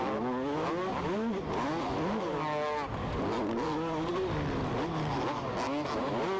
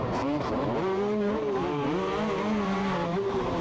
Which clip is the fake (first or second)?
second